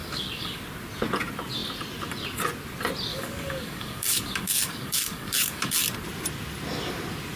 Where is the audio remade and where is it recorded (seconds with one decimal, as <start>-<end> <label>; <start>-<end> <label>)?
0.0-0.6 remade; 0.6-3.1 recorded; 3.1-5.7 remade; 5.7-7.4 recorded